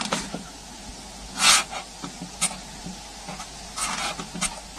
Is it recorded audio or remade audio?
recorded